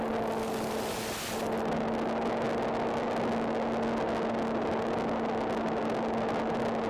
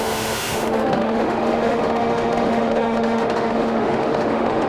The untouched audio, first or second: first